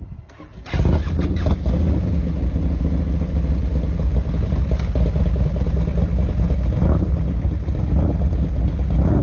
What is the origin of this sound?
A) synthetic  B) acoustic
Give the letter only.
B